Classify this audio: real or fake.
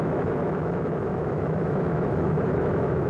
fake